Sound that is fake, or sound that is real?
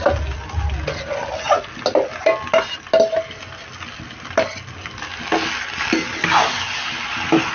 real